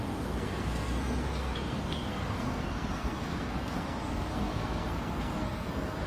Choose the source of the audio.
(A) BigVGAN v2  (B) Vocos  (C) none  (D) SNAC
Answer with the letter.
D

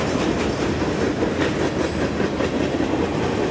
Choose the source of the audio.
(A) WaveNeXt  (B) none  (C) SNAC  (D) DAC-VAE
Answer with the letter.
B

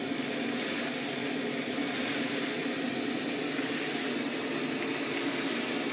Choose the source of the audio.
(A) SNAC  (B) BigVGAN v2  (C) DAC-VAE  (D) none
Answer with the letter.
D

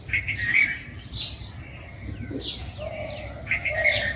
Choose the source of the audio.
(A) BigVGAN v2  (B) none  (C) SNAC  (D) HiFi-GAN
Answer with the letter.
B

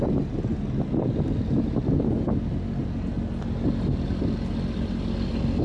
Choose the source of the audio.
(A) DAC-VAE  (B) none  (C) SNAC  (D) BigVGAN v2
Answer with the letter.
B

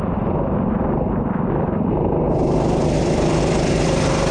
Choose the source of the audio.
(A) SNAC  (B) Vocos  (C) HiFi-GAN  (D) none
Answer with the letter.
D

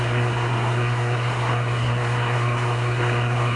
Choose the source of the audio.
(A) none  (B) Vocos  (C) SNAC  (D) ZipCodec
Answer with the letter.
C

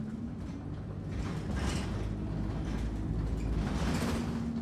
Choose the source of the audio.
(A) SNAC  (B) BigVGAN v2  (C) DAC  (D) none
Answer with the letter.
D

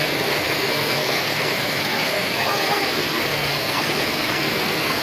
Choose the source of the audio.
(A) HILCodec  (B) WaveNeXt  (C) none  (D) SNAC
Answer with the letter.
D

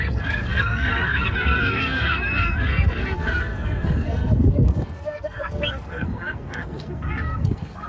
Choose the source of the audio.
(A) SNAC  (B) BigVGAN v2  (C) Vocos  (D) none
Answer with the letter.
A